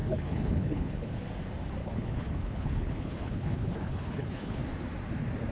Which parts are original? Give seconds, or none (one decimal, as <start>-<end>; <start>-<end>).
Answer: 1.1-1.8; 4.6-5.5